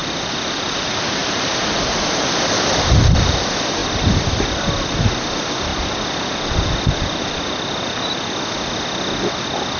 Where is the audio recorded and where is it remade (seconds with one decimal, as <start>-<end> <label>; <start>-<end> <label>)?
0.0-0.5 remade; 0.5-1.2 recorded; 1.2-3.4 remade; 3.4-5.7 recorded; 5.7-7.4 remade; 7.4-9.8 recorded